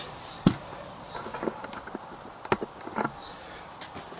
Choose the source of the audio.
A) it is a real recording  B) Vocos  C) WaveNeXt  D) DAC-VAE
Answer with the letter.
A